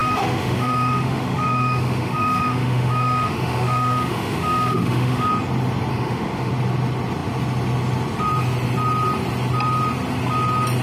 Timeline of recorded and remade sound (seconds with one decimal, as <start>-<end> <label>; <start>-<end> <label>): 0.0-5.3 remade; 5.3-5.9 recorded; 5.9-6.5 remade; 6.5-10.8 recorded